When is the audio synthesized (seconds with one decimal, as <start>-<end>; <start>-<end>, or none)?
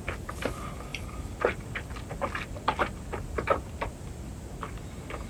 none